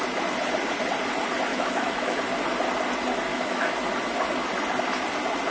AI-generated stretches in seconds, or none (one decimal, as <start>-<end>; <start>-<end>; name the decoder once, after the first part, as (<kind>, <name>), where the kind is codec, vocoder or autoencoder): 1.5-2.2 (autoencoder, DAC-VAE); 3.3-3.8